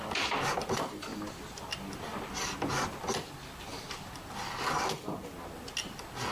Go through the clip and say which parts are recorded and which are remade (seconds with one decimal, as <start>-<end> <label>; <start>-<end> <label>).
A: 0.0-6.3 recorded